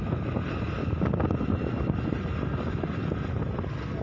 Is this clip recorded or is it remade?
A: recorded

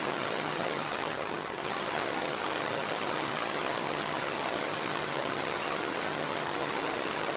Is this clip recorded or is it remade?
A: remade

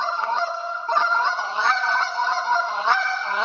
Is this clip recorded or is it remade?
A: remade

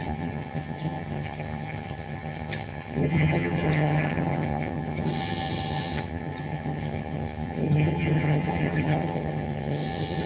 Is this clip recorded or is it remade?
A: remade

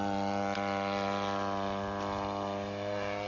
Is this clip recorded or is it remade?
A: recorded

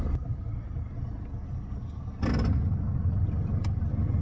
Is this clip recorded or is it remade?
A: recorded